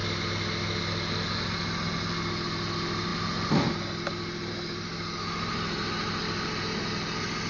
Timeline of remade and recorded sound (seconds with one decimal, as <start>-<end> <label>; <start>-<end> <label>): 0.0-7.5 recorded